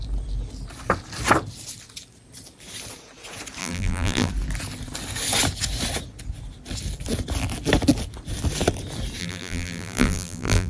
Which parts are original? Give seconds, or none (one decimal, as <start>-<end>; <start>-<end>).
0.0-3.6; 4.3-9.2